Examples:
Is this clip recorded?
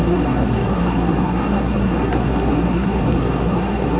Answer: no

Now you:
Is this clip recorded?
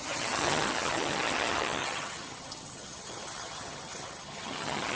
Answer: no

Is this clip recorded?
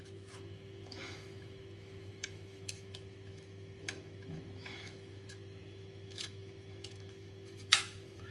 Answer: no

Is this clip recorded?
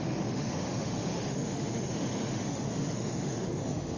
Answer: no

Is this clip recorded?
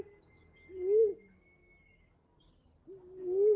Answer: yes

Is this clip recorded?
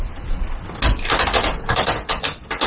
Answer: yes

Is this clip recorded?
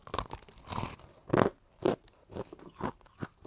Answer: yes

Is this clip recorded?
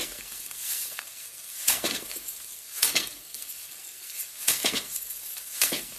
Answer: no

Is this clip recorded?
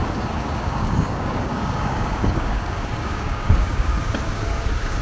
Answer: no